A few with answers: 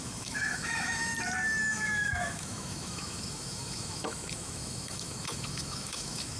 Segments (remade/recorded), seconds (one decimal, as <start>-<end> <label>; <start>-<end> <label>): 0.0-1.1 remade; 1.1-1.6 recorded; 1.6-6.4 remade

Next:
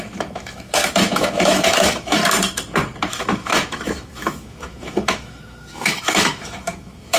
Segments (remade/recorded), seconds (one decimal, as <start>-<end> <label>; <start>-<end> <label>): 0.0-2.2 remade; 2.2-3.1 recorded; 3.1-7.2 remade

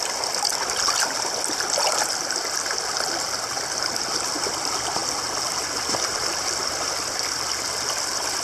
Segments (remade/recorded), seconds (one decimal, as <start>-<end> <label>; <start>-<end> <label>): 0.0-8.4 recorded